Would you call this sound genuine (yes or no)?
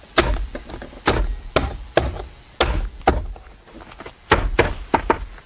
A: yes